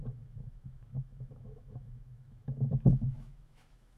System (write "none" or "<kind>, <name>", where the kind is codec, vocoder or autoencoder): autoencoder, DAC-VAE